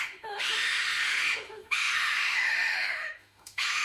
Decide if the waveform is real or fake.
fake